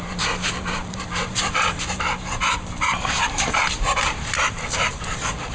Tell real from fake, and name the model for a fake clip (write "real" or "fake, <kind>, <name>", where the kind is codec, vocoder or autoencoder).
fake, vocoder, BigVGAN v2